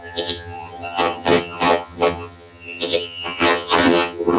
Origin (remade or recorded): remade